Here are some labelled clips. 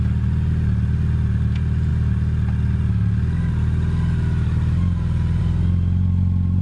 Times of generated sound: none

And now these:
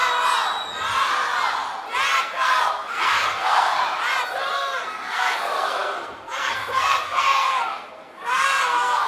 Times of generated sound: 2.2-3.8 (codec, SNAC); 4.5-9.1